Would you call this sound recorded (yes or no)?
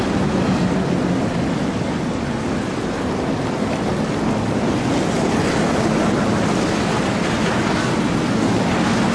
yes